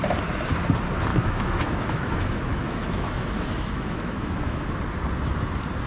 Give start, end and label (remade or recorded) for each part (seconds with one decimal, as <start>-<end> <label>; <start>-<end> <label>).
0.0-1.1 recorded; 1.1-4.6 remade; 4.6-5.9 recorded